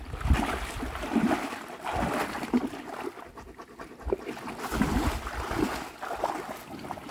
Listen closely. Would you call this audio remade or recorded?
recorded